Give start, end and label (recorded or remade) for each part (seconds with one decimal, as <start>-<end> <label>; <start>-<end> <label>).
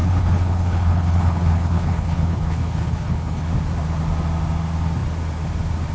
0.0-3.5 remade; 3.5-5.9 recorded